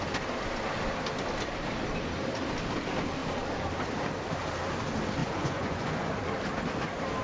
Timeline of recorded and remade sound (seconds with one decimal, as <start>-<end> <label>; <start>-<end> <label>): 0.0-5.2 recorded; 5.2-6.1 remade; 6.1-7.2 recorded